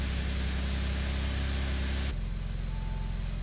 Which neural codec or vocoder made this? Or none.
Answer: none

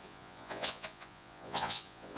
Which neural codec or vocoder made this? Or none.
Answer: vocoder, Vocos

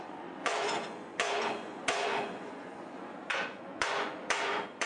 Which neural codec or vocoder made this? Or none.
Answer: vocoder, Vocos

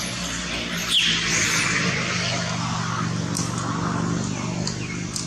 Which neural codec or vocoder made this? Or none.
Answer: none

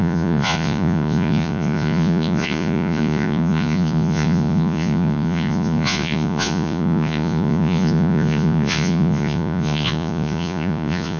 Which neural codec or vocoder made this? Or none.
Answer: vocoder, Vocos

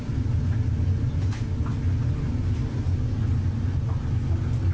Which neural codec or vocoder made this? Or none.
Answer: none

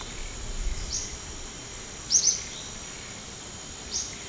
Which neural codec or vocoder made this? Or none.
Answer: none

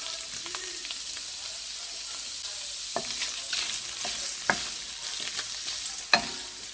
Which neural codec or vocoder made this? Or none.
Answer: none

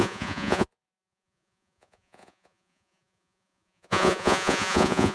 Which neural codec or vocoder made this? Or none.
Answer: vocoder, Vocos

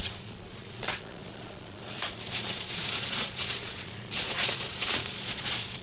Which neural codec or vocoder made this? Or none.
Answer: vocoder, Vocos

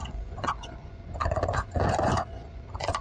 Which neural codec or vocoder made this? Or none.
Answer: vocoder, Vocos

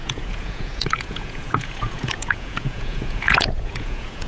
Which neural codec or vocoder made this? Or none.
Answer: vocoder, Vocos